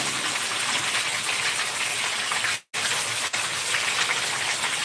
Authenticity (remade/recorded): recorded